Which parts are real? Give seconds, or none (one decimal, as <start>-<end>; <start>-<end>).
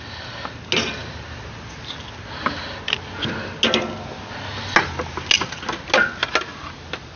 0.0-7.2